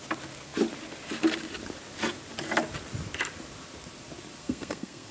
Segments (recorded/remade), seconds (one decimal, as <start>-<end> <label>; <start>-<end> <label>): 0.0-4.4 recorded; 4.4-5.1 remade